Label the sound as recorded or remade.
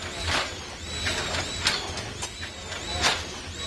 recorded